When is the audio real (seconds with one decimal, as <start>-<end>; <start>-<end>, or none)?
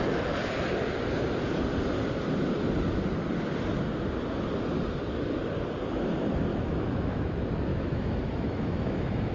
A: 0.0-6.5; 7.2-7.7